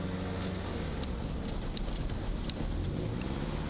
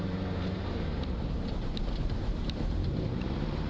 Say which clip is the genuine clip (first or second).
first